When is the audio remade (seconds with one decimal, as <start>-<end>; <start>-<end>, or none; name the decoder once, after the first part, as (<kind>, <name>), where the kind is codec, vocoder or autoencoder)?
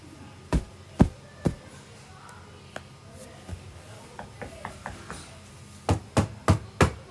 none